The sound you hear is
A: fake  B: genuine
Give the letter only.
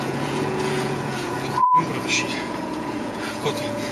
A